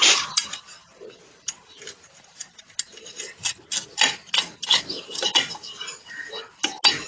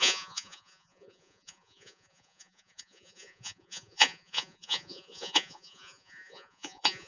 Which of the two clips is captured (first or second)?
first